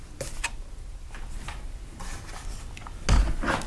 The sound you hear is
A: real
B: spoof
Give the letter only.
A